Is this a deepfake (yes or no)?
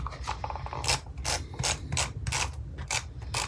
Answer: no